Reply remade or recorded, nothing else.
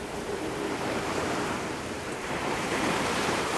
remade